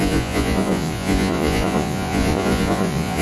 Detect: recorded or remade remade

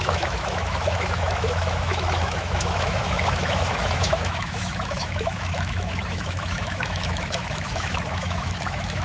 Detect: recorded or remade remade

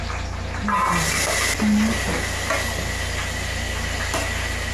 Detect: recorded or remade recorded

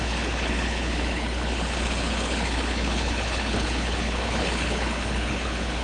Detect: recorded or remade remade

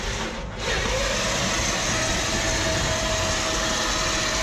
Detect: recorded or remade recorded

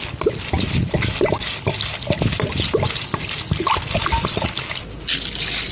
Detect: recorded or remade recorded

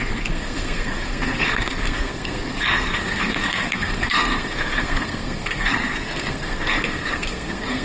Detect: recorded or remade remade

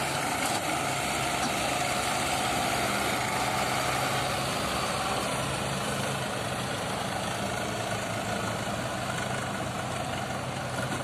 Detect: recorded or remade recorded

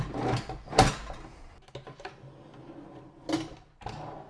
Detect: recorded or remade recorded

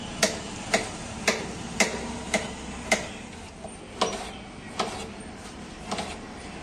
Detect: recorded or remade recorded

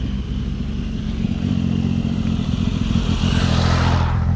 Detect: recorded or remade remade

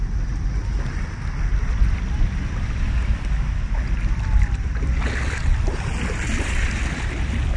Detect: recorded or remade recorded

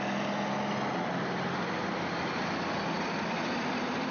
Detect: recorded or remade recorded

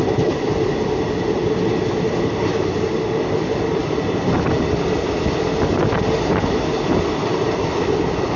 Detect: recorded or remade recorded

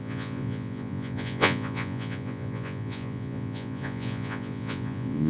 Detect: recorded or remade remade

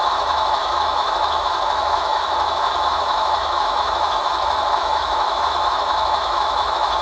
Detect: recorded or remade remade